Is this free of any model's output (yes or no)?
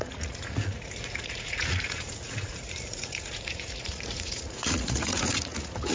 no